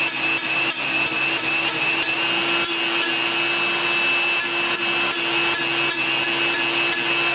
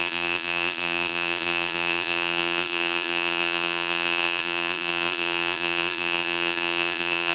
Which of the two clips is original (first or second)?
first